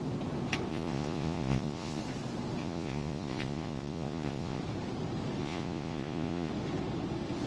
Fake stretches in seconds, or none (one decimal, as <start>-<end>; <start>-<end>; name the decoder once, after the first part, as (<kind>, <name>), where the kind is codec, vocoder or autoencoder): 0.7-2.0 (vocoder, Vocos); 2.6-4.6; 5.4-6.5

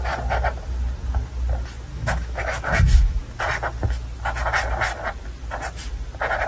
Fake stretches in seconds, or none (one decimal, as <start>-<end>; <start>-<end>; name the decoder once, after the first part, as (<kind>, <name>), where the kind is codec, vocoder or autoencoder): 1.9-3.2 (autoencoder, DAC-VAE)

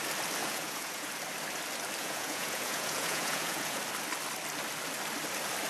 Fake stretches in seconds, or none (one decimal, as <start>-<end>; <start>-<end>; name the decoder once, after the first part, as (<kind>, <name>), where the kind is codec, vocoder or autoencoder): 0.4-1.1 (vocoder, Vocos); 2.0-3.8